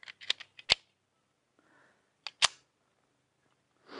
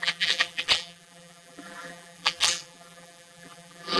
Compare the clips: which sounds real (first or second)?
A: first